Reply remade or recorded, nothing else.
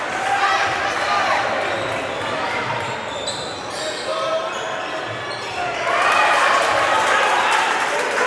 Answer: recorded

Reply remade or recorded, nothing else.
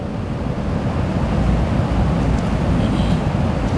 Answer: recorded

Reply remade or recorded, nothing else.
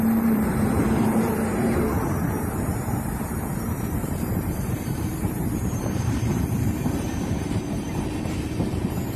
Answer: remade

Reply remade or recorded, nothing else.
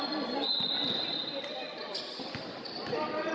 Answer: recorded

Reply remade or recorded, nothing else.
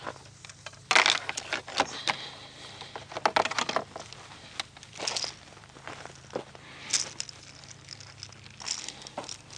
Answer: recorded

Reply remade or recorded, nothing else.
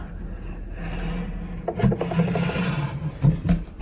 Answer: recorded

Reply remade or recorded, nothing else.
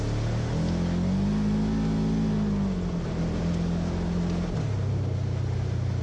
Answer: recorded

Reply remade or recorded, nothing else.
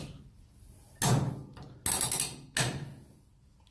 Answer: recorded